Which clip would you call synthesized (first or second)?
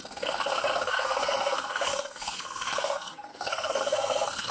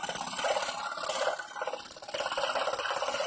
first